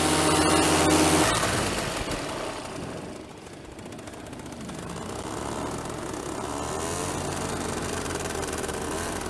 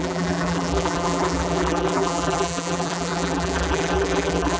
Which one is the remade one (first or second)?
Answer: second